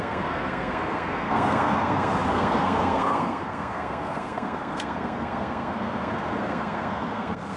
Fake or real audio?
fake